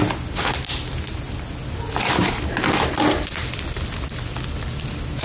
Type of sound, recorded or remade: recorded